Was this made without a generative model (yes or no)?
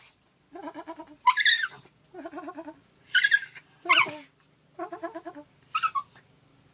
yes